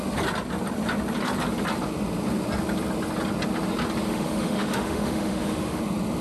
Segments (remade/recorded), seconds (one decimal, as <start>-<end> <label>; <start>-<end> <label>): 0.0-4.1 recorded; 4.1-5.8 remade; 5.8-6.2 recorded